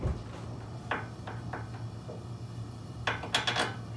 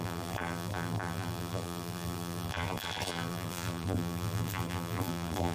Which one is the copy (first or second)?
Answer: second